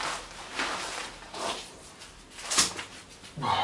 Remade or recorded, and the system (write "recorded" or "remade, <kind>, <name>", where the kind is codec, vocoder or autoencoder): recorded